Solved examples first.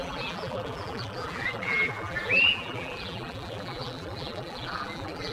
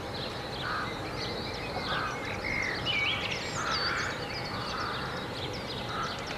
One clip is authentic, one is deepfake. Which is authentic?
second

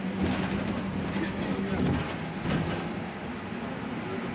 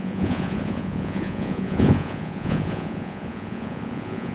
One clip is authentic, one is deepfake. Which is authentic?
first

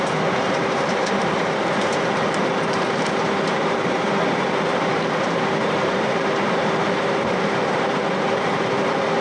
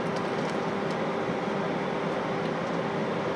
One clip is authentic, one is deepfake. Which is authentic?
second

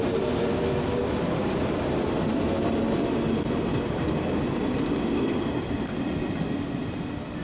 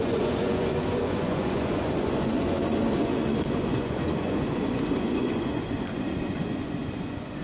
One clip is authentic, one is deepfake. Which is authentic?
first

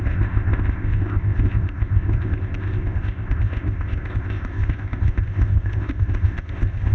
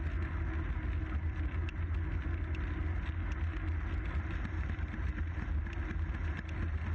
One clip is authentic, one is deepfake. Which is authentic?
second